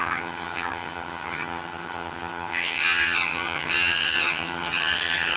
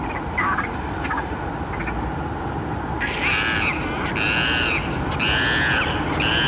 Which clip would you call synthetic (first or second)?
first